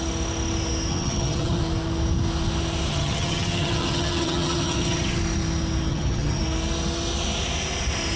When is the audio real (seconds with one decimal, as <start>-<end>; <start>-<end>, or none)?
0.0-0.9; 1.6-2.9; 5.2-5.9; 6.4-8.2